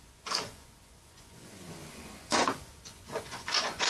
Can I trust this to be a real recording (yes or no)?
no